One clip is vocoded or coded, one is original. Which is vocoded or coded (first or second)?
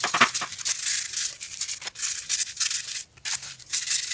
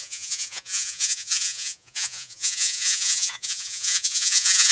second